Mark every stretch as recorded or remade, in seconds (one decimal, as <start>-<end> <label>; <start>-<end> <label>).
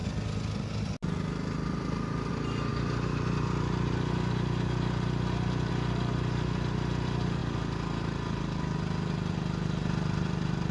0.0-10.7 recorded